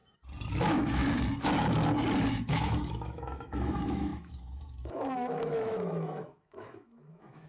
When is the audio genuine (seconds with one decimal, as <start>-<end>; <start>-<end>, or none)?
0.0-0.5; 1.0-2.3